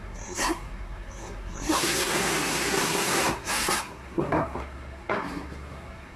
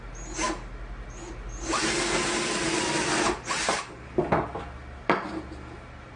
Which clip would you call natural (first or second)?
second